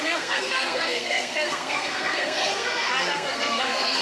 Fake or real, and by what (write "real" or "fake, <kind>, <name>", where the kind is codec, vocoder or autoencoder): fake, codec, SNAC